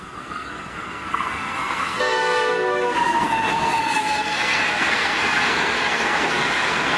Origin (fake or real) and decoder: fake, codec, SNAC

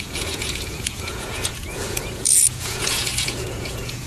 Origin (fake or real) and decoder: fake, vocoder, Vocos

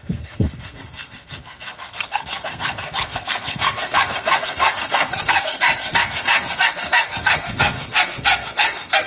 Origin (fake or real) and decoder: fake, codec, SNAC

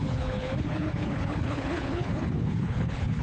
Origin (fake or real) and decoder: fake, codec, HILCodec